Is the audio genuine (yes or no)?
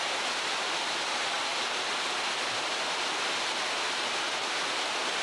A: yes